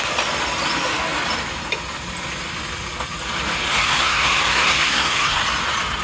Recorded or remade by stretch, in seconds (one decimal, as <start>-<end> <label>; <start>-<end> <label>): 0.0-3.7 recorded; 3.7-5.4 remade; 5.4-6.0 recorded